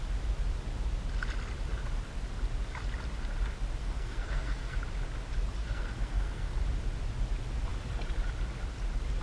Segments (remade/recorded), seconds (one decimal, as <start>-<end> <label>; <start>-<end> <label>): 0.0-3.8 recorded; 3.8-4.8 remade; 4.8-5.6 recorded; 5.6-6.5 remade; 6.5-9.2 recorded